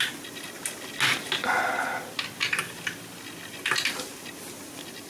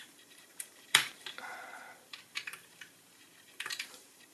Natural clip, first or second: first